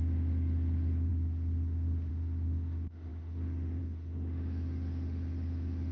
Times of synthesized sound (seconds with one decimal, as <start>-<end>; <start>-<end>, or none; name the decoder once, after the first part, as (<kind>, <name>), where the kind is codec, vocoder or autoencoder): 0.0-5.9 (autoencoder, DAC-VAE)